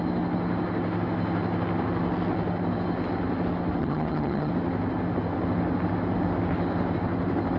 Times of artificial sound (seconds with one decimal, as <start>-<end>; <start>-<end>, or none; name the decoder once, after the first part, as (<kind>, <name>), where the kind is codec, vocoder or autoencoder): 3.8-4.5 (vocoder, HiFi-GAN)